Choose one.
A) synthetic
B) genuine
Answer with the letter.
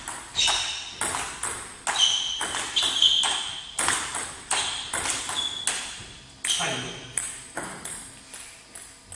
B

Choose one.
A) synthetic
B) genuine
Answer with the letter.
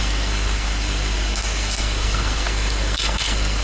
A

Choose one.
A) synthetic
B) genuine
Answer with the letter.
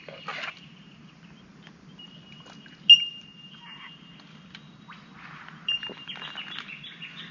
B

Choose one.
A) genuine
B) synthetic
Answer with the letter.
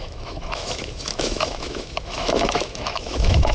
B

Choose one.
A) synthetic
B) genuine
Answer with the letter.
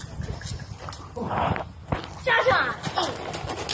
B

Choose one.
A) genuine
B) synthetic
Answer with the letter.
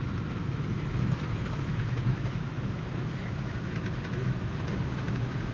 B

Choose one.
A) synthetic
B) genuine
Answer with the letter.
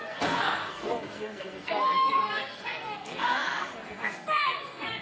A